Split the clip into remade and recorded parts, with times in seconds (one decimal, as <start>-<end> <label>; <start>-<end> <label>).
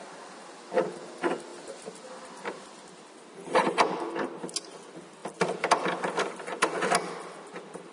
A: 0.0-7.9 recorded